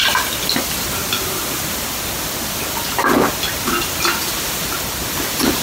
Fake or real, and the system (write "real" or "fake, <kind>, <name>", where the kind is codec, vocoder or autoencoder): real